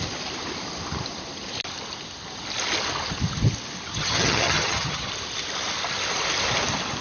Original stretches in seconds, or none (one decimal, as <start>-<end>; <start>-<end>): 0.0-3.9; 5.1-7.0